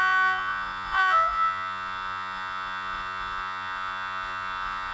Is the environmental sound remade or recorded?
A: remade